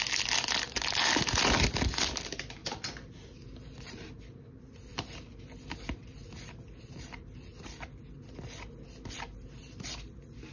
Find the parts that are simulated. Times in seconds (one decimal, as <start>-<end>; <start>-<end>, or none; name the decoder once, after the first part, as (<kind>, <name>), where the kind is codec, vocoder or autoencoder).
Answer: none